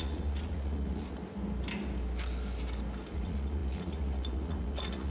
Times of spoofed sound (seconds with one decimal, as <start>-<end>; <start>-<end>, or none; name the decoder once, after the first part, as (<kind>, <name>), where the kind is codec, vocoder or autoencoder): 0.0-1.2 (vocoder, Vocos); 3.1-5.1